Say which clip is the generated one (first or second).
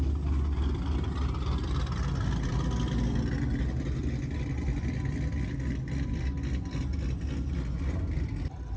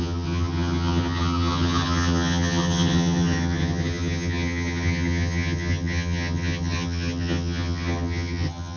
second